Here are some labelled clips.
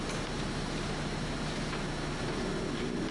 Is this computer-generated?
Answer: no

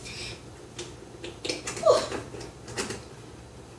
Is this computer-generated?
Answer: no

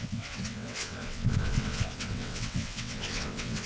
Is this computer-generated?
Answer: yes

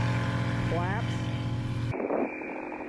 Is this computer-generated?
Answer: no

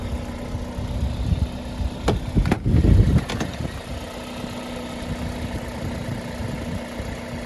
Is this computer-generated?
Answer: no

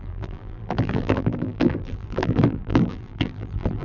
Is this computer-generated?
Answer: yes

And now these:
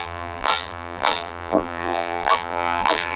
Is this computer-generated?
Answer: yes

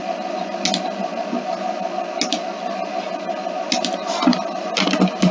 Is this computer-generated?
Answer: no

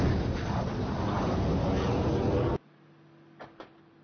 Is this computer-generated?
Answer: no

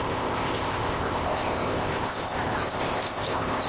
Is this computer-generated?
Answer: yes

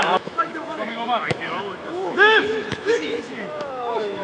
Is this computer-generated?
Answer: yes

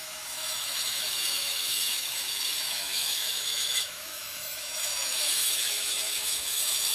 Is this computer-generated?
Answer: yes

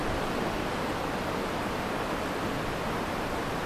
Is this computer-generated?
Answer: no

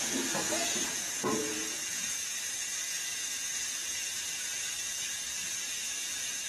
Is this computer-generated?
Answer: yes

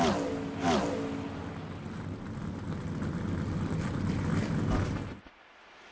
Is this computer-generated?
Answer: no